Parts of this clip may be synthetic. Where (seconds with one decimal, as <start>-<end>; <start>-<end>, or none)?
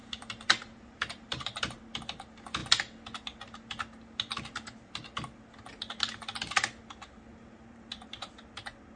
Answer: 0.0-1.8; 7.3-8.3